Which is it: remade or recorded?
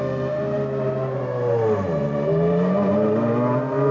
recorded